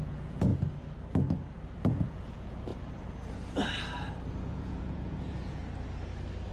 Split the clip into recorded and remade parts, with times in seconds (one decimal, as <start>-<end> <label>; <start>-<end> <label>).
0.0-0.5 remade; 0.5-1.8 recorded; 1.8-2.7 remade; 2.7-4.4 recorded; 4.4-5.6 remade; 5.6-6.5 recorded